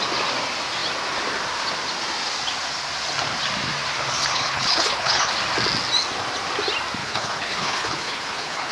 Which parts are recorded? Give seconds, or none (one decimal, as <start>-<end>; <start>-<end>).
0.0-4.3; 5.3-7.0